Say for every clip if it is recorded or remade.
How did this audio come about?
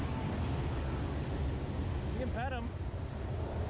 recorded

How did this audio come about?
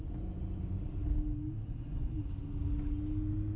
recorded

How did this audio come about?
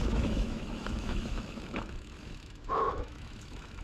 remade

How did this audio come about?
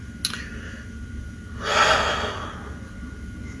recorded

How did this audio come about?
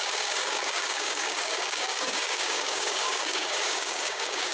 remade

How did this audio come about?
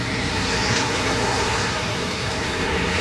remade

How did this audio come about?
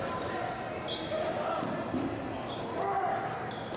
recorded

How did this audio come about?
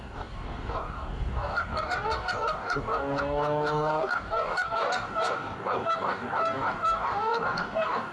remade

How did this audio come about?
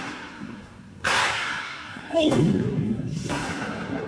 remade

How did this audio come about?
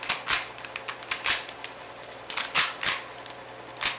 recorded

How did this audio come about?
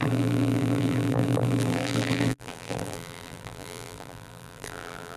remade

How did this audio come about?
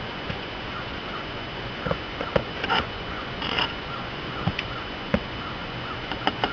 remade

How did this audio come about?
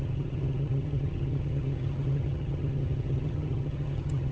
remade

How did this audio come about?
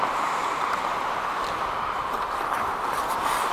recorded